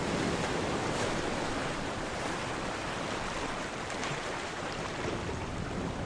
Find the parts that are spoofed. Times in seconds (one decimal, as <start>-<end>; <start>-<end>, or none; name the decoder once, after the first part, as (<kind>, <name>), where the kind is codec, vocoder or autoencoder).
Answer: 0.0-0.7 (vocoder, BigVGAN v2); 1.6-5.1